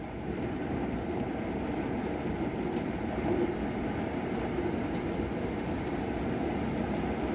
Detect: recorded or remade recorded